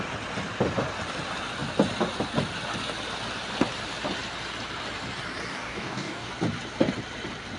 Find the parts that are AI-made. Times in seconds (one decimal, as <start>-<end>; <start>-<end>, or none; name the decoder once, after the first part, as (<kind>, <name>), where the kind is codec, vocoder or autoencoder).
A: 5.5-6.3 (codec, DAC)